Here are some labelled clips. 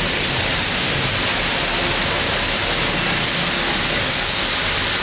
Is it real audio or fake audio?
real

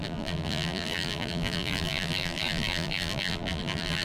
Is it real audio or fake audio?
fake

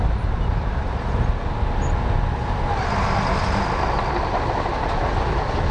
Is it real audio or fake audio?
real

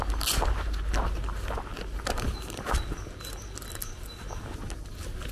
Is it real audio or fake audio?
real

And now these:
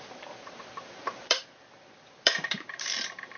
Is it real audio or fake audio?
fake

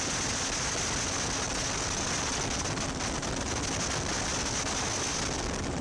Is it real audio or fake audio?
real